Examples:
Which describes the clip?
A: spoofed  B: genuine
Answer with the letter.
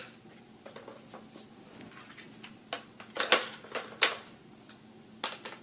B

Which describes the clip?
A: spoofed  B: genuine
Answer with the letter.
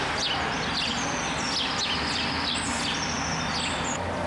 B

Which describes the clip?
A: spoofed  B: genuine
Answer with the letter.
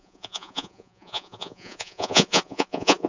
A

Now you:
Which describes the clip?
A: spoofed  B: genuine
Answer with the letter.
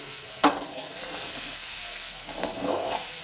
A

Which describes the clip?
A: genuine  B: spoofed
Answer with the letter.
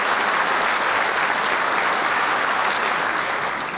A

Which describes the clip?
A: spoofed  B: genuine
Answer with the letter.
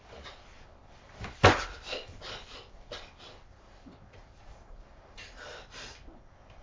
A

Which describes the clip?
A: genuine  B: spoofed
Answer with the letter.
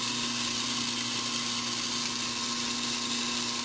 A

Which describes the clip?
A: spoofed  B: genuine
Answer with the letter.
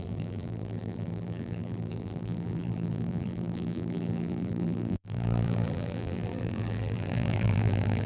A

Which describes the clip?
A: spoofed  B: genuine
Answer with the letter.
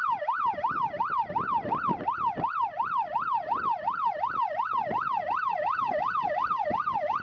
B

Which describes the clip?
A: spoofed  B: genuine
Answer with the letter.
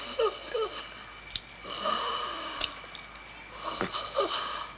B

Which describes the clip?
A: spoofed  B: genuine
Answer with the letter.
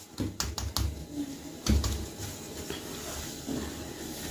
B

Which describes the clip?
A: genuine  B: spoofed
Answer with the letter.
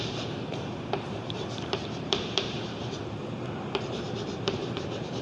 B